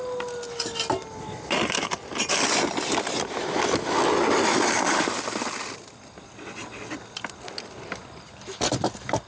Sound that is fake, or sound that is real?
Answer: real